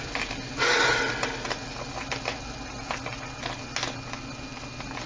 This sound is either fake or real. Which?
real